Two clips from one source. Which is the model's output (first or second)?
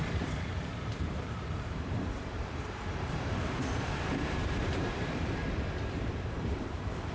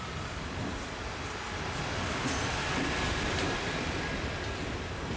first